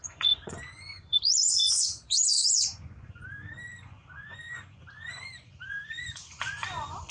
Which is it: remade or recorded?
remade